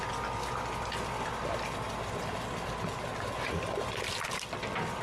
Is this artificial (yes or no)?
no